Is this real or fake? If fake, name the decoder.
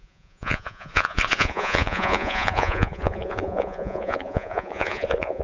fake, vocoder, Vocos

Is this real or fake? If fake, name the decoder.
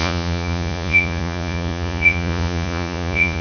fake, vocoder, Vocos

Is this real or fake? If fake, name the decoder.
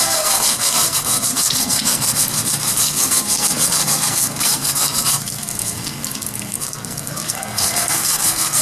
fake, codec, SNAC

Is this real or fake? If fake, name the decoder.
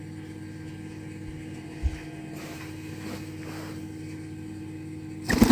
real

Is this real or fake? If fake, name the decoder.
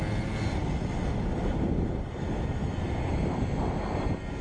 real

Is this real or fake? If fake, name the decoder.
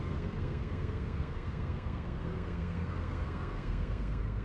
fake, codec, SNAC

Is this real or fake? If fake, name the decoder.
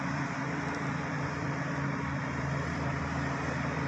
fake, vocoder, BigVGAN v2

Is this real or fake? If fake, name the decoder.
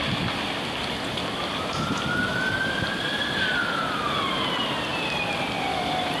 real